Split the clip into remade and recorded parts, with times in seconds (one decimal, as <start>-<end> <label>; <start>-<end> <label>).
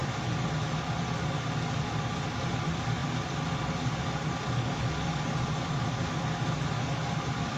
0.0-7.6 recorded